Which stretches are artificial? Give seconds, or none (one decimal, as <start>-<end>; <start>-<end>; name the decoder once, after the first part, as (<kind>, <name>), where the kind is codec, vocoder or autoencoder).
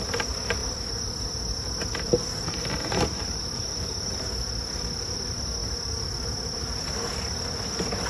none